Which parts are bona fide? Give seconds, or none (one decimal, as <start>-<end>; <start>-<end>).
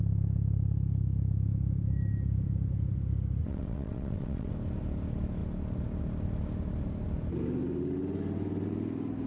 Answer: 0.0-3.4; 4.5-9.3